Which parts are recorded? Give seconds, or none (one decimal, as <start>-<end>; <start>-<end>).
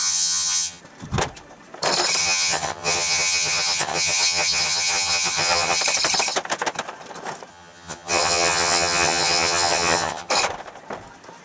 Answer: 0.8-2.2; 5.8-7.5; 10.3-11.4